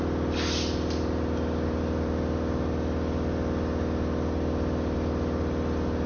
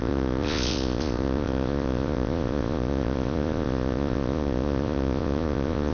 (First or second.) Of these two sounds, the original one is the first